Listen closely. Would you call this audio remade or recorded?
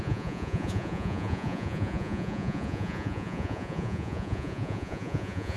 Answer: remade